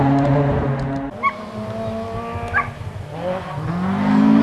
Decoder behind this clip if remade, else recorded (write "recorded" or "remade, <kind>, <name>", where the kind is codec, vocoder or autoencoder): recorded